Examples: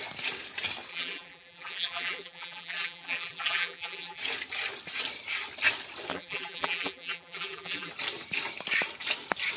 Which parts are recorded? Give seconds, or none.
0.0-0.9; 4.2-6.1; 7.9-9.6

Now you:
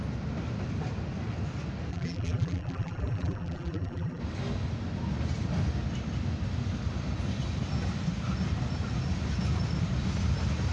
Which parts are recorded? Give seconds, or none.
0.0-1.9; 4.2-10.7

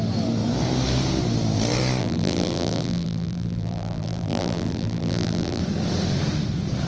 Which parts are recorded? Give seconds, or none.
0.0-2.0; 5.6-6.9

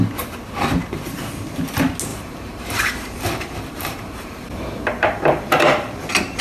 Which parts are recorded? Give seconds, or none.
0.0-2.1; 5.9-6.4

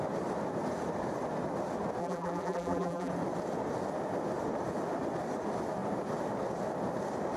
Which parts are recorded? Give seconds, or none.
0.0-2.0; 3.1-7.4

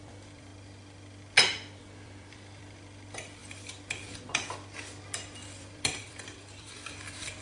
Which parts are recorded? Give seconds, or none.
0.5-1.8; 3.4-5.5